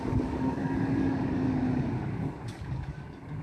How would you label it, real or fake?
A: fake